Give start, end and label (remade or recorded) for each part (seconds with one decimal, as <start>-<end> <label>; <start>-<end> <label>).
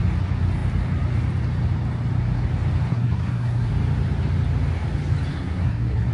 0.0-2.9 recorded; 2.9-3.7 remade; 3.7-5.3 recorded; 5.3-6.1 remade